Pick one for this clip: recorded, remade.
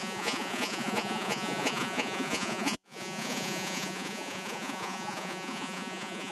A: remade